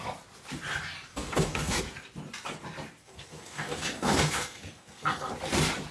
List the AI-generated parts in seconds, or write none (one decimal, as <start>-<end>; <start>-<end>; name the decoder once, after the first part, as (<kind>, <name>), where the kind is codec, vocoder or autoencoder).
1.1-1.8 (codec, SNAC); 3.0-5.3